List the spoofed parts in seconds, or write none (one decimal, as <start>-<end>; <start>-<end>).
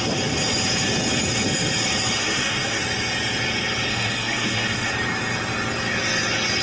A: 2.2-2.8; 3.9-4.9